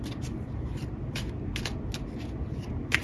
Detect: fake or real real